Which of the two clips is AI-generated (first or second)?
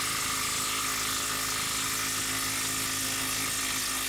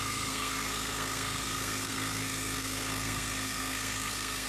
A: second